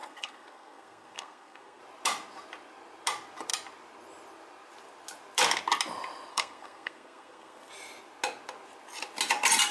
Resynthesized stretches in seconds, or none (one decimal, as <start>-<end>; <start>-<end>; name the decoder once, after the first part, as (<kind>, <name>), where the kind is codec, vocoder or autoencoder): 0.0-1.8 (codec, SNAC); 6.3-7.7